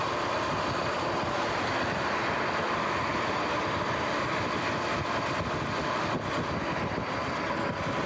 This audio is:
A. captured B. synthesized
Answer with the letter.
A